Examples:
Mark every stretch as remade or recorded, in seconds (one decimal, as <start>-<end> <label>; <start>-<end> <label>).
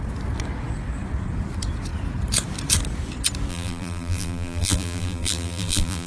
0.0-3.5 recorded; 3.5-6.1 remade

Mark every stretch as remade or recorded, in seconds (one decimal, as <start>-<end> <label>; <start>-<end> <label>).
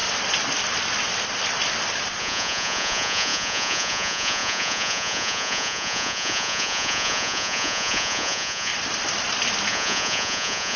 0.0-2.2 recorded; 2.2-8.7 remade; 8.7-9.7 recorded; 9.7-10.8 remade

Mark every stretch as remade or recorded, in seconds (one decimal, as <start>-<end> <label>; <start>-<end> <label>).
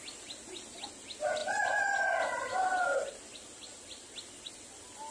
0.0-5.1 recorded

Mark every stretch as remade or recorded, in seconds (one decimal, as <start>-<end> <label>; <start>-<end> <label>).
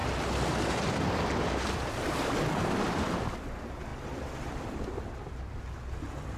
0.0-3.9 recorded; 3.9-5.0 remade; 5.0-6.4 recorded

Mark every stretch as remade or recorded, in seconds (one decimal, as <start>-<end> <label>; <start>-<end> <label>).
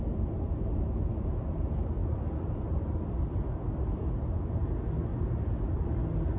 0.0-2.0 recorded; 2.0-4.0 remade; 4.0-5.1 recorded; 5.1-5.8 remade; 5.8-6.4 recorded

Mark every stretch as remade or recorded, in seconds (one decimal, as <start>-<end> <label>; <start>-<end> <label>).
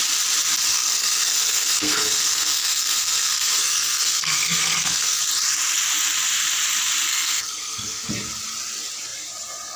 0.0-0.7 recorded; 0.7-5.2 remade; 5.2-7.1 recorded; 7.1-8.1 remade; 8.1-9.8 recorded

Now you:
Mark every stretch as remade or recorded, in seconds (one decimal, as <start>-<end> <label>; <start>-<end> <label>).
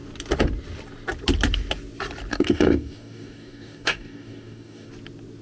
0.0-2.3 recorded; 2.3-4.9 remade; 4.9-5.4 recorded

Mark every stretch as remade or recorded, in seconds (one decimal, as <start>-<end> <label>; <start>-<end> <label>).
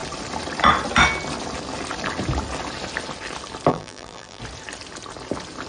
0.0-3.7 recorded; 3.7-4.4 remade; 4.4-5.7 recorded